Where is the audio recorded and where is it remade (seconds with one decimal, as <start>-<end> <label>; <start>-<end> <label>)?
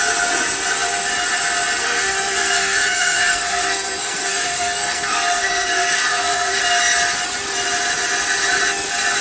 0.0-1.8 recorded; 1.8-6.6 remade; 6.6-9.2 recorded